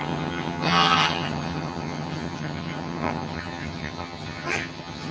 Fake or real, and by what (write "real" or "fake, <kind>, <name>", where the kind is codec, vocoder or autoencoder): fake, vocoder, HiFi-GAN